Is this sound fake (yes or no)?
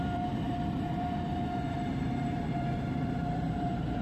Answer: yes